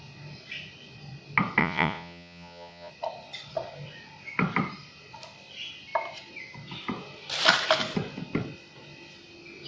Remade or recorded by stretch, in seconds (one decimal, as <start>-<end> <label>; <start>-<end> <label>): 0.0-1.6 recorded; 1.6-2.9 remade; 2.9-9.7 recorded